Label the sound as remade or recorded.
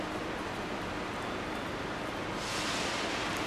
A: recorded